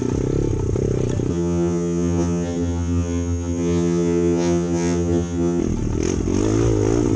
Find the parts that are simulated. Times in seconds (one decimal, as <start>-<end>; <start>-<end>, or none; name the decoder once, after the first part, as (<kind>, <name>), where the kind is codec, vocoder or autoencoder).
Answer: 1.3-5.6 (vocoder, HiFi-GAN)